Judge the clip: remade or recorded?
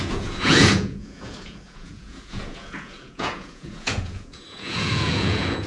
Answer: remade